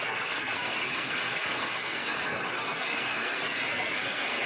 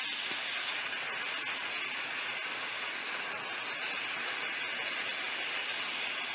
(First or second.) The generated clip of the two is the first